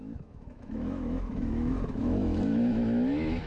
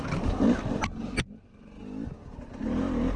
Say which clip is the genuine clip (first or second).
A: second